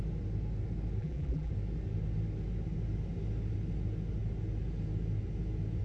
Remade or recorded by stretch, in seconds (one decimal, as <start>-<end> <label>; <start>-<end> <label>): 0.0-1.0 recorded; 1.0-1.5 remade; 1.5-5.8 recorded